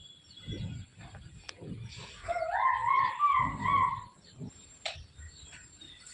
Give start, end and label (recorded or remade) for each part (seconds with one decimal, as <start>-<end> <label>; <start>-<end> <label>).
0.0-0.9 remade; 0.9-2.0 recorded; 2.0-3.6 remade; 3.6-4.2 recorded; 4.2-6.1 remade